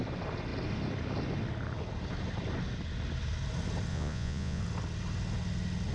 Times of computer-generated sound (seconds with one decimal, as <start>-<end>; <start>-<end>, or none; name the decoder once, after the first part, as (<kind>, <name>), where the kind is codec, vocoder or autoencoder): 3.9-4.6 (vocoder, Vocos)